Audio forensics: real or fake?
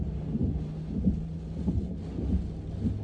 real